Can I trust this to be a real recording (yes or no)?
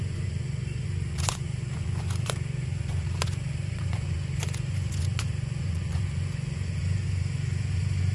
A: no